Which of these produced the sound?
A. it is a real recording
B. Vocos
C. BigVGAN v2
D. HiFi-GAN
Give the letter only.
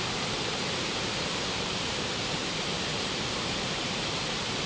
C